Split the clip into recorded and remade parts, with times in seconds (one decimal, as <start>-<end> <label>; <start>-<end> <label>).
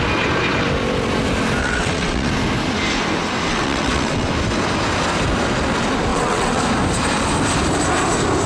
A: 0.0-1.6 recorded; 1.6-2.3 remade; 2.3-3.5 recorded; 3.5-4.3 remade; 4.3-6.1 recorded; 6.1-6.6 remade; 6.6-8.5 recorded